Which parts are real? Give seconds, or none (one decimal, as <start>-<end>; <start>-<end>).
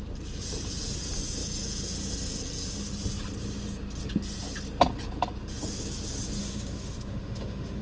0.0-6.4